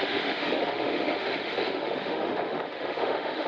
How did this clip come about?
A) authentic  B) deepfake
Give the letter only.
B